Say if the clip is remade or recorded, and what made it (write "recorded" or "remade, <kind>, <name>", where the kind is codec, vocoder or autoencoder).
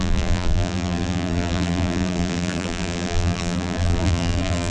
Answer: remade, vocoder, BigVGAN v2